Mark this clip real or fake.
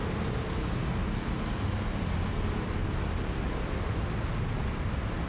real